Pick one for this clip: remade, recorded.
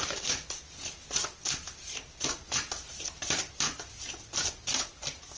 recorded